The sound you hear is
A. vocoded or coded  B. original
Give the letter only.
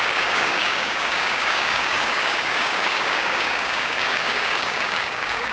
A